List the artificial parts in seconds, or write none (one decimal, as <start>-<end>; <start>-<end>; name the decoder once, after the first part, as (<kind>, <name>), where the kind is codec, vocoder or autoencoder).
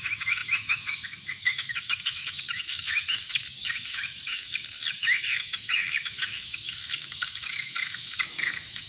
0.0-8.9 (autoencoder, DAC-VAE)